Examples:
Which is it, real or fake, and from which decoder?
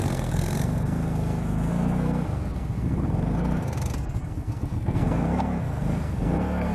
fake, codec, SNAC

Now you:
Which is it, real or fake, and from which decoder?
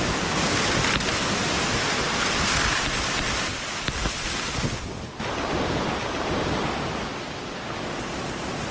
real